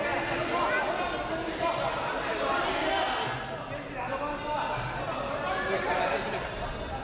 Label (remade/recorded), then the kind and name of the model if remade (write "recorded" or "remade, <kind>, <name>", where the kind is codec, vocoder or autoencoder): recorded